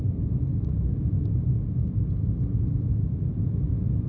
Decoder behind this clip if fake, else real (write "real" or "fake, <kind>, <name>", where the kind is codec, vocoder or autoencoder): real